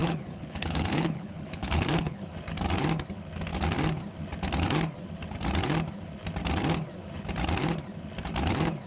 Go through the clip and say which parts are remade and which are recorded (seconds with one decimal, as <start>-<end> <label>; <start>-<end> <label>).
0.0-2.2 remade; 2.2-8.9 recorded